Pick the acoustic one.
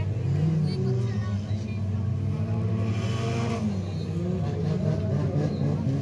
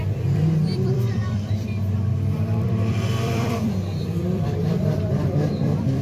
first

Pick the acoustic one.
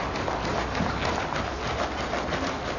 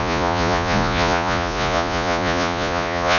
first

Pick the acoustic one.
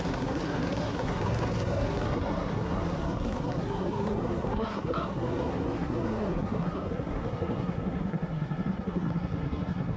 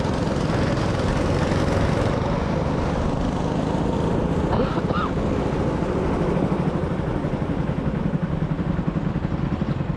second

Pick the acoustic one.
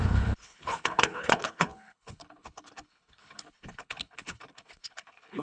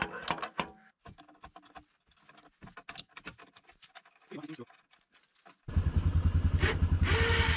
second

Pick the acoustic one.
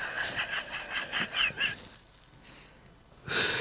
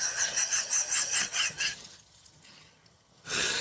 first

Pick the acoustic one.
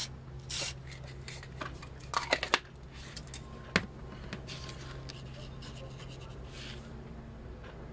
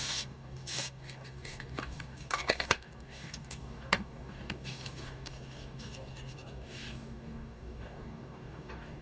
first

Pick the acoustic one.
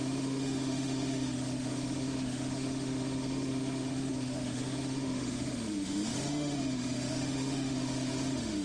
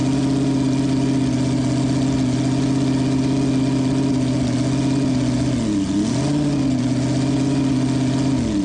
second